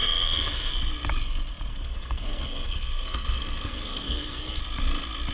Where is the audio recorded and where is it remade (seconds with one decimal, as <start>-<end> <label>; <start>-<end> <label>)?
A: 0.0-0.7 remade; 0.7-1.7 recorded; 1.7-4.6 remade; 4.6-5.3 recorded